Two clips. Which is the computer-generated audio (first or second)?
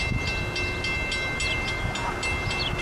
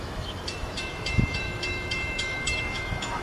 second